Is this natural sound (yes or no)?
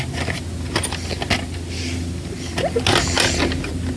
yes